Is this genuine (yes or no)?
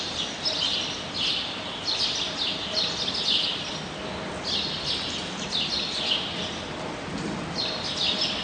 yes